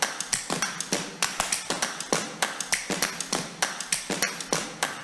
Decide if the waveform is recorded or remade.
recorded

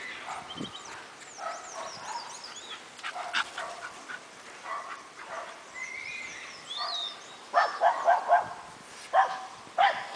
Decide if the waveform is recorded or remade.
recorded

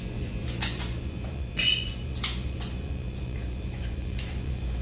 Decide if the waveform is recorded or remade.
remade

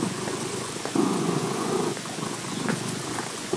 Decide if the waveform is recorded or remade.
remade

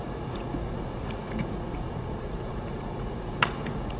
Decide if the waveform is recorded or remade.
remade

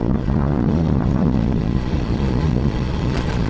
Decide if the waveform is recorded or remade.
remade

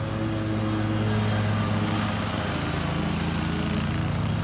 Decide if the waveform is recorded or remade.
recorded